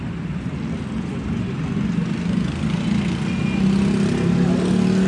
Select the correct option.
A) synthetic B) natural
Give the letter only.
B